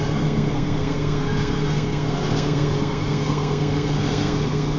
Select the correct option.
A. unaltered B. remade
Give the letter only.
B